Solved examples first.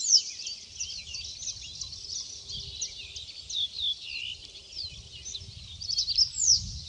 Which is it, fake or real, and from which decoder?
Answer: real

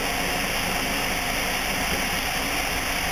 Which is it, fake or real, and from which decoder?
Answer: real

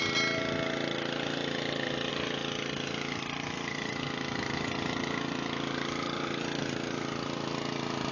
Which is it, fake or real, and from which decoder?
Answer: real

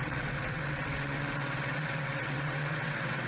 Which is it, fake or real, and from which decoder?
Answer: fake, vocoder, WaveNeXt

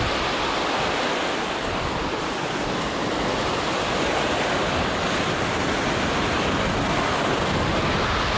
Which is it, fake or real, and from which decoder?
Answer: real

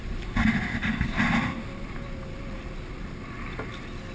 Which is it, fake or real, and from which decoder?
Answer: real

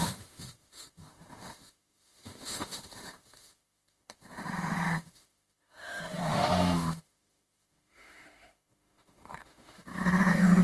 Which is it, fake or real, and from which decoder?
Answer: fake, autoencoder, DAC-VAE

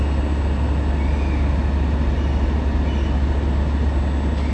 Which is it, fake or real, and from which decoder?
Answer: real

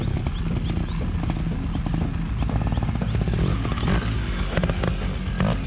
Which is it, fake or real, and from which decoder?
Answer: real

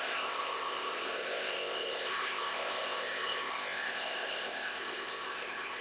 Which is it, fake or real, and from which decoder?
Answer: fake, codec, ZipCodec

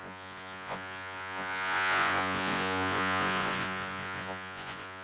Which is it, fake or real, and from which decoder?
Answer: fake, vocoder, Vocos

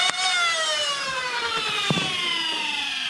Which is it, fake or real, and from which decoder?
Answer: fake, vocoder, BigVGAN v2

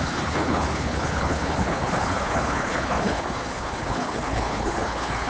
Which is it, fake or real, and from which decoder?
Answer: fake, codec, HILCodec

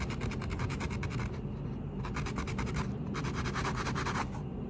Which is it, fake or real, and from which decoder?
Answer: real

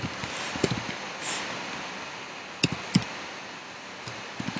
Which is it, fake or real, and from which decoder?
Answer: real